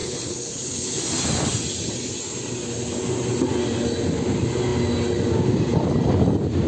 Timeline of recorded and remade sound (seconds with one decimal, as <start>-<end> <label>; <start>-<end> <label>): 0.0-1.0 remade; 1.0-6.7 recorded